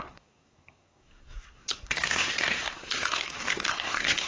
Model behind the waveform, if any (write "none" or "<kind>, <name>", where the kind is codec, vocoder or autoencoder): codec, SNAC